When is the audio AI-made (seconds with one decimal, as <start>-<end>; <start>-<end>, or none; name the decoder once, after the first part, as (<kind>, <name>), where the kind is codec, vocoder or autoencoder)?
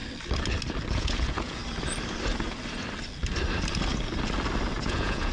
0.9-1.6 (vocoder, Vocos); 4.8-5.3